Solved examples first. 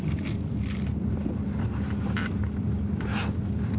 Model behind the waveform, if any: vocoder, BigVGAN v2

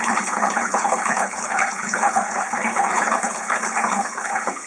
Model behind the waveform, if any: codec, HILCodec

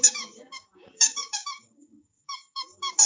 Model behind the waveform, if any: codec, DAC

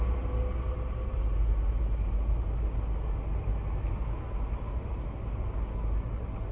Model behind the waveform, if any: none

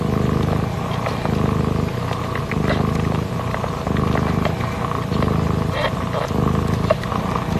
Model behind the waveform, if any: none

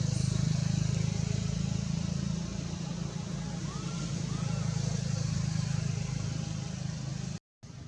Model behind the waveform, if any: none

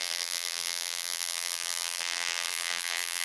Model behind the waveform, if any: vocoder, BigVGAN v2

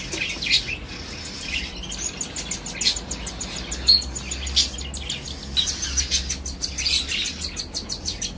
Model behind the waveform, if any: none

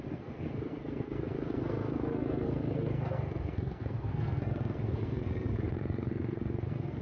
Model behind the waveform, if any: codec, SNAC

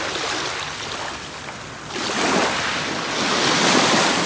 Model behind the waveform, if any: none